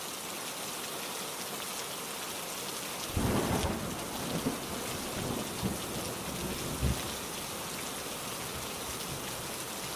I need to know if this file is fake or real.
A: real